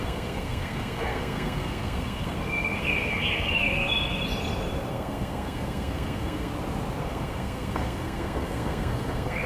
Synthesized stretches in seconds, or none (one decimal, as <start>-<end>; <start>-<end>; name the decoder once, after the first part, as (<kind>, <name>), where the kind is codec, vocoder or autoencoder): 0.0-4.2 (codec, SNAC); 4.9-6.5; 7.0-9.5